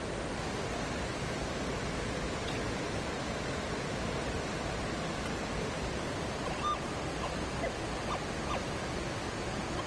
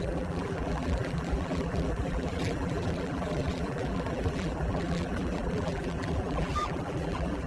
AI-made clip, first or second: second